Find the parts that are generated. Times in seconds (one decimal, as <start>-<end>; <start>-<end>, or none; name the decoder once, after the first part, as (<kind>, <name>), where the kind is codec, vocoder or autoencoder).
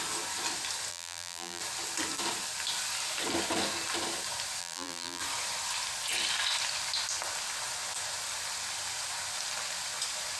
0.9-1.6 (vocoder, BigVGAN v2); 4.6-5.2